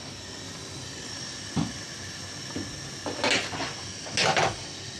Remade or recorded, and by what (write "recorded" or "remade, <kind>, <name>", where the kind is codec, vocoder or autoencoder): recorded